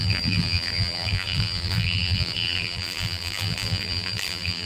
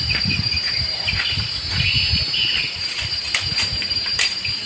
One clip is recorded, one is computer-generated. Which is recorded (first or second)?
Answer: second